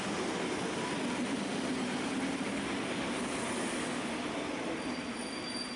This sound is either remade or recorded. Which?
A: recorded